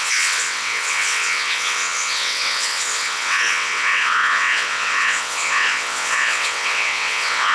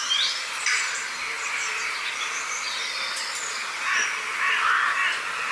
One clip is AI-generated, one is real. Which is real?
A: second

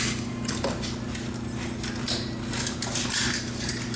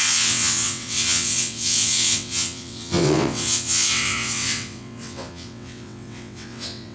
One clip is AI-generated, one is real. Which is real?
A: first